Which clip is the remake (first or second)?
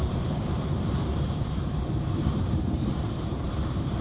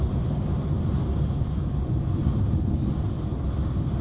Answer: first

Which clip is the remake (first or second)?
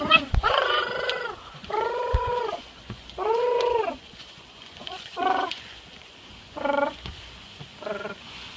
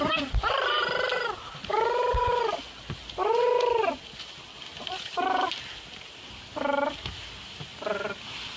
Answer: first